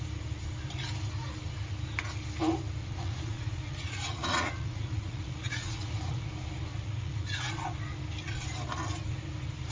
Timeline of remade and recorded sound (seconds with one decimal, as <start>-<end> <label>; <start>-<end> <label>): 0.0-2.8 recorded; 2.8-6.3 remade; 6.3-6.7 recorded; 6.7-7.5 remade; 7.5-9.7 recorded